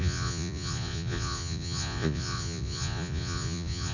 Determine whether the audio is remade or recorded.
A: remade